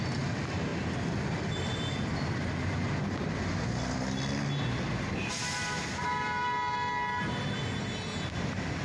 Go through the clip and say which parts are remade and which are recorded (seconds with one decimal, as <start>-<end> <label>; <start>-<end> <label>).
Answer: 0.0-8.8 recorded